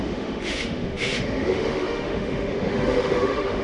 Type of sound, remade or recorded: remade